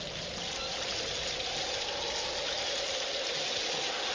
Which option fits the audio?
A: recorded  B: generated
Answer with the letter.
A